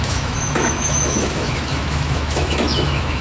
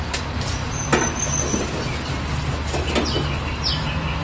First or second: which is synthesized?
first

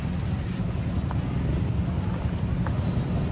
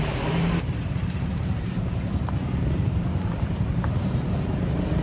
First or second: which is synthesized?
second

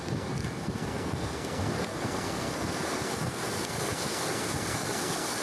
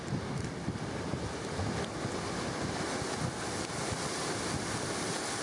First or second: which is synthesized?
first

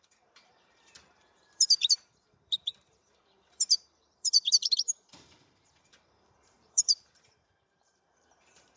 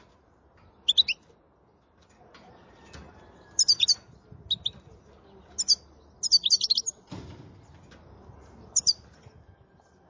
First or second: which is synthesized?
first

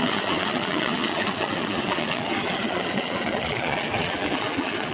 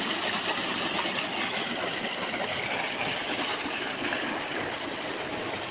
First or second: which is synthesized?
first